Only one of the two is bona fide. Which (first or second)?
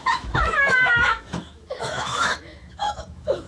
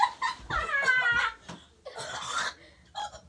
second